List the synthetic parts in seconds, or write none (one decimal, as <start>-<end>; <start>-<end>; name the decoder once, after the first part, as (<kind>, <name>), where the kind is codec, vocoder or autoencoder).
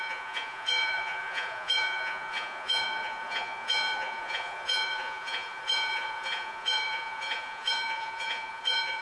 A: 0.0-9.0 (vocoder, Vocos)